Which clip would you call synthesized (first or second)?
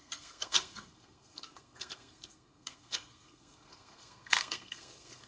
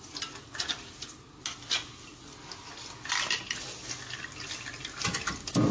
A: first